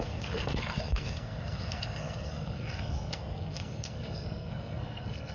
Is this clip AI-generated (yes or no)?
yes